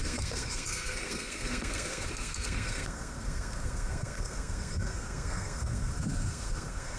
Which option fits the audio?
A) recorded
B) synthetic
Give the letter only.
B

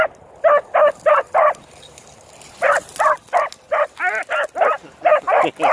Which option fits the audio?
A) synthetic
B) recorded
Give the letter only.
B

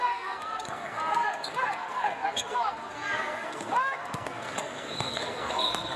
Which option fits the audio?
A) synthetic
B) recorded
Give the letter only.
A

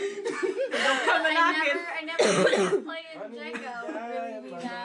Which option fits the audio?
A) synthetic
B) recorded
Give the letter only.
B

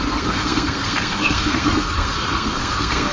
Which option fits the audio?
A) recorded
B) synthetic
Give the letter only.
B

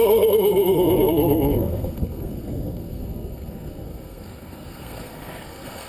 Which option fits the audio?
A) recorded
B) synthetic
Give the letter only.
B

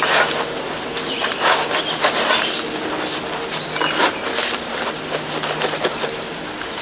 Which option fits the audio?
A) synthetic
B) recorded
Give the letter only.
B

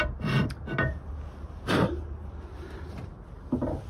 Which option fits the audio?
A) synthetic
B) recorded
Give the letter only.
B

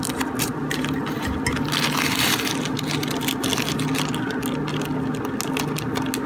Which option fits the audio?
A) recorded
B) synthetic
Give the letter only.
A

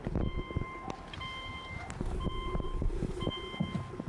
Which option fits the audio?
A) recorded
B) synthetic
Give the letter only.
A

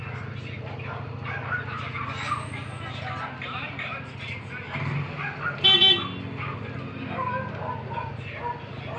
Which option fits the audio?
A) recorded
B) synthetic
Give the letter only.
A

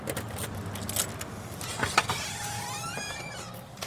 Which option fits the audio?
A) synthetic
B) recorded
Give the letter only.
B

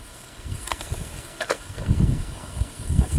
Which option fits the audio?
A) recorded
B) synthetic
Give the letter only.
B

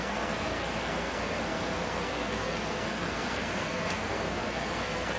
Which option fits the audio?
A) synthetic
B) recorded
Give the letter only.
A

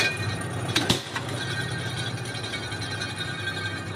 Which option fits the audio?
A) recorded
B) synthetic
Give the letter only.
A